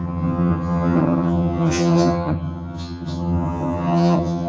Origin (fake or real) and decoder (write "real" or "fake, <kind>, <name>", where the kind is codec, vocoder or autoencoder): fake, vocoder, HiFi-GAN